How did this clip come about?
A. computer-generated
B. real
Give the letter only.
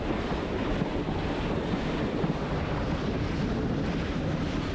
B